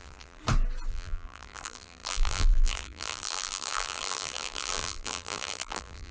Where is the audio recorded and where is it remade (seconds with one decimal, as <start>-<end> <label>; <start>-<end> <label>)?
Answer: 0.0-0.4 remade; 0.4-0.9 recorded; 0.9-6.1 remade